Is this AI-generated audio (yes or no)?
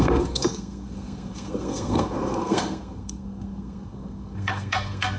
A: yes